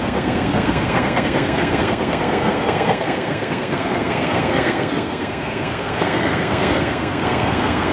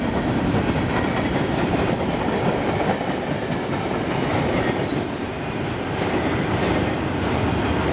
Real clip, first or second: second